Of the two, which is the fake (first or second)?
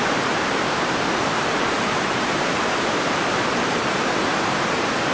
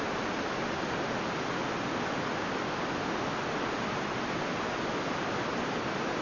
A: first